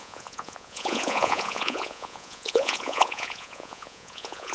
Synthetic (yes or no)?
yes